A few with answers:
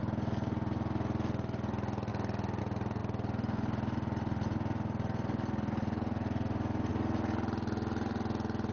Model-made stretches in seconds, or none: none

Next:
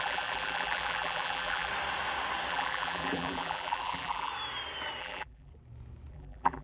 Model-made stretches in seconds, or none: 0.0-1.7 (vocoder, BigVGAN v2); 2.5-4.3; 5.0-5.5; 6.1-6.6

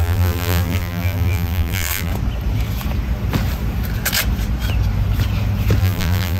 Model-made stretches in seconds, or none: 0.0-2.1 (vocoder, BigVGAN v2); 5.8-6.4